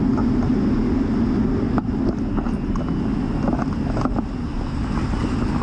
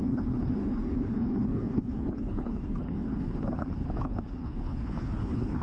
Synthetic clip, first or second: second